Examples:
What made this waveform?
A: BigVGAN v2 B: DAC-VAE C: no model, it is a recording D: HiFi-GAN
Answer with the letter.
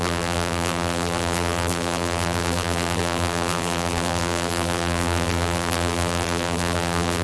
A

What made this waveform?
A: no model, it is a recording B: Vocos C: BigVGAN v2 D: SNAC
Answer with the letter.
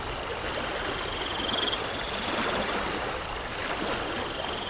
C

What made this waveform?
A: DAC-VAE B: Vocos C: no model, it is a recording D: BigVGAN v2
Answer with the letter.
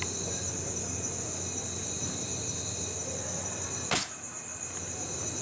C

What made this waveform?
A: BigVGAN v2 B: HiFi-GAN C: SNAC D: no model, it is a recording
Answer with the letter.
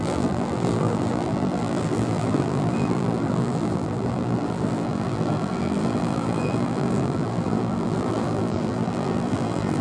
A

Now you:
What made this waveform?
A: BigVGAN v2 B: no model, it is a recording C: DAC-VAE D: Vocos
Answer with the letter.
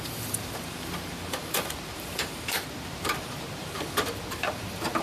A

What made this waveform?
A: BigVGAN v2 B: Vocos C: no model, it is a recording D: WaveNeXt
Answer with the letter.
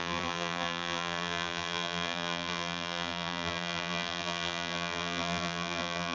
A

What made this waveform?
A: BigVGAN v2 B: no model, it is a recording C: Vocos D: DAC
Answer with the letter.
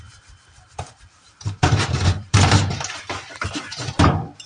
A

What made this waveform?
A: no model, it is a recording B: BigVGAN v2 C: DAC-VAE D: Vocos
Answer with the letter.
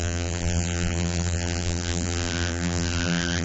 B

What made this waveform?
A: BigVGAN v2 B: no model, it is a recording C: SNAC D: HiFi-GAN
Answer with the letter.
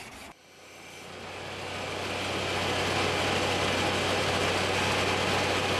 B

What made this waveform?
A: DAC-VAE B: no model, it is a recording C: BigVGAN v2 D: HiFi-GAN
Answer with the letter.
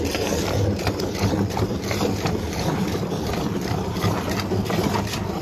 C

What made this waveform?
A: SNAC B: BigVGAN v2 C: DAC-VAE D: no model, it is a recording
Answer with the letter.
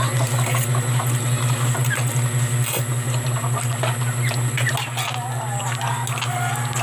D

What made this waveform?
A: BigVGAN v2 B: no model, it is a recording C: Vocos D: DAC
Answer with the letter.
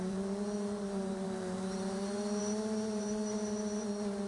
A